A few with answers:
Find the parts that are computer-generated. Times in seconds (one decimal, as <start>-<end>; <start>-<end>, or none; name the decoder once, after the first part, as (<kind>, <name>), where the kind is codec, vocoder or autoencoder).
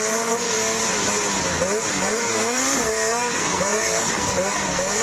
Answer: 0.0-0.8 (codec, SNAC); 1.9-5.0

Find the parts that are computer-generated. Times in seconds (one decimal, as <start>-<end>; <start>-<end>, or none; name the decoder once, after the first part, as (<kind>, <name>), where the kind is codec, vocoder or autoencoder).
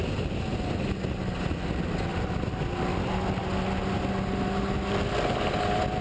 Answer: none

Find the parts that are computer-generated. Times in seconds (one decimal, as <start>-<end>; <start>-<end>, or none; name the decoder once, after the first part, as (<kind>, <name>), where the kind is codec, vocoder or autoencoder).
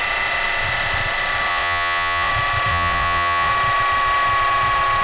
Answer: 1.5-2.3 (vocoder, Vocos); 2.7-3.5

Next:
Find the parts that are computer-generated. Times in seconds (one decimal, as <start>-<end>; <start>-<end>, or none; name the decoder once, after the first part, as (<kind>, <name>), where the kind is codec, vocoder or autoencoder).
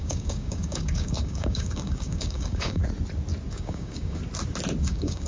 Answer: 0.0-2.8 (codec, DAC); 3.5-4.2; 4.8-5.3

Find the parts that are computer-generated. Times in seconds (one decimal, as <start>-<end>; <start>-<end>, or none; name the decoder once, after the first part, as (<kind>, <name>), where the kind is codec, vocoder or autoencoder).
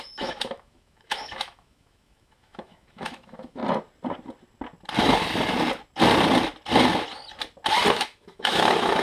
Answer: 0.0-3.6 (autoencoder, DAC-VAE); 7.9-9.0